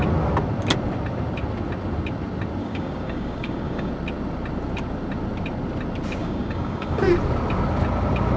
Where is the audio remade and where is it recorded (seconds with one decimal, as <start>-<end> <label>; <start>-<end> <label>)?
0.0-2.6 recorded; 2.6-3.9 remade; 3.9-6.2 recorded; 6.2-7.0 remade; 7.0-8.4 recorded